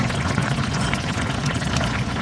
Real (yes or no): no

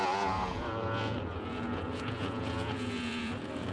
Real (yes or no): no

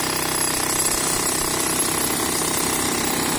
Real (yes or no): yes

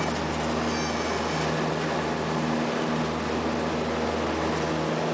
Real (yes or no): yes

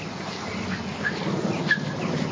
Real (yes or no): yes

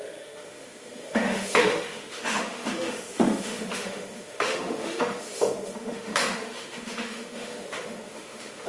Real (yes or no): no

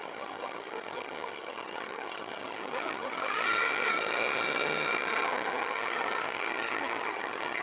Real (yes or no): no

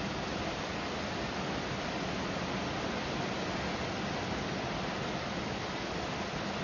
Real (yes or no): no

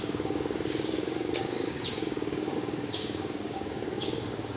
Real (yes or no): no